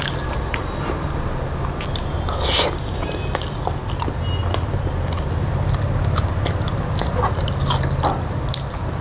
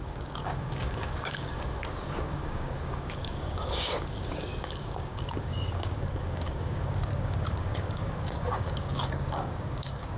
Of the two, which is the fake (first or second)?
second